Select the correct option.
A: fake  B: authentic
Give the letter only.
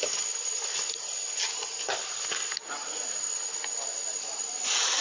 B